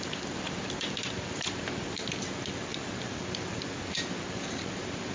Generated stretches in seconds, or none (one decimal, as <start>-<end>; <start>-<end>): none